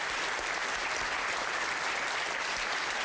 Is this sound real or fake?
fake